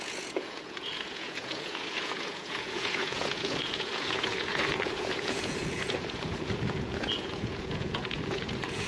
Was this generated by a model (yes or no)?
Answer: yes